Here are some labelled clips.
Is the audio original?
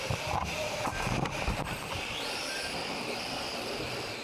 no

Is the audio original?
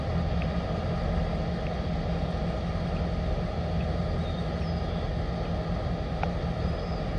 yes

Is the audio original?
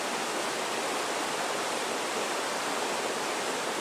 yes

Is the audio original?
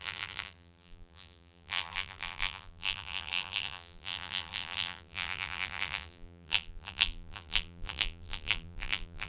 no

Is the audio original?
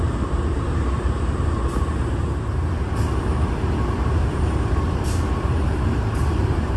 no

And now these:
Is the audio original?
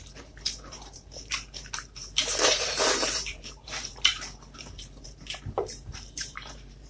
no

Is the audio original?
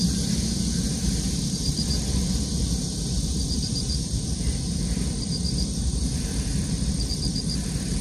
no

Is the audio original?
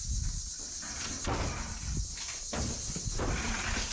no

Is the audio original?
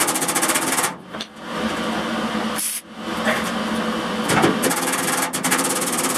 no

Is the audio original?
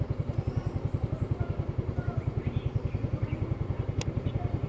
no